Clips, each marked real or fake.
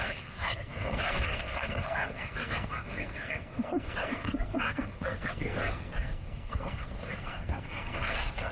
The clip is fake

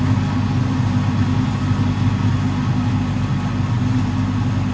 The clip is real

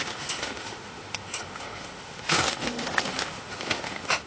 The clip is fake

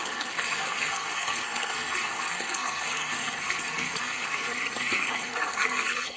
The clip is fake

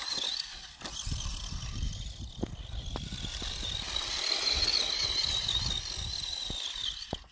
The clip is real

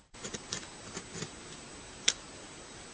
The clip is fake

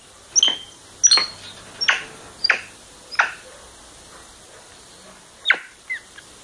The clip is real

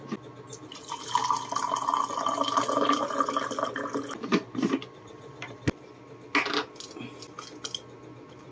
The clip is real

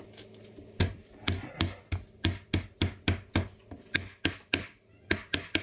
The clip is real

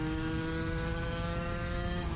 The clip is fake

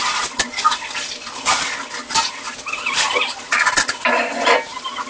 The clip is real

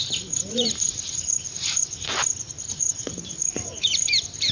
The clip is fake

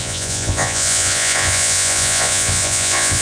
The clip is fake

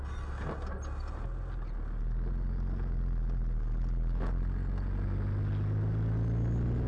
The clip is real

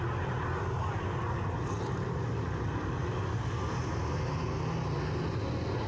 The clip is real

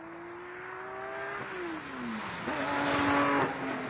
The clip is real